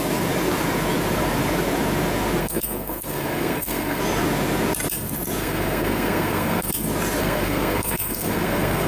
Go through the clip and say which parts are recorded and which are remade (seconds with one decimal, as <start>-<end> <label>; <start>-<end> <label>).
0.0-2.4 recorded; 2.4-4.0 remade; 4.0-5.4 recorded; 5.4-6.7 remade; 6.7-7.2 recorded; 7.2-8.9 remade